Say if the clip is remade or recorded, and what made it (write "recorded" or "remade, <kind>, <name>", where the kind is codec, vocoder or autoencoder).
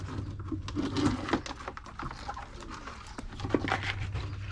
recorded